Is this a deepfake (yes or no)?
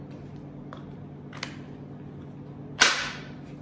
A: no